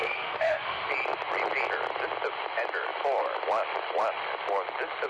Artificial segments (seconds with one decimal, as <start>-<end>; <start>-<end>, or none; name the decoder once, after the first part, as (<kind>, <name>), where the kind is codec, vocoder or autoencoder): 0.0-0.9 (autoencoder, DAC-VAE)